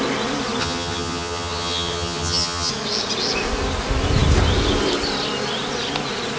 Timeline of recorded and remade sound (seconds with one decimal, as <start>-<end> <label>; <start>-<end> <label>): 0.0-0.6 recorded; 0.6-2.7 remade; 2.7-6.4 recorded